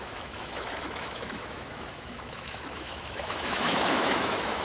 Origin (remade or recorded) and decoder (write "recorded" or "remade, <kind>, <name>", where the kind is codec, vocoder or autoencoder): remade, autoencoder, DAC-VAE